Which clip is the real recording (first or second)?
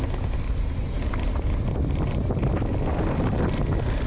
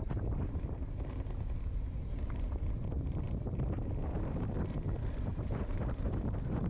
first